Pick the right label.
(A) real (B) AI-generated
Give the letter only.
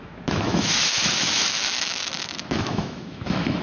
B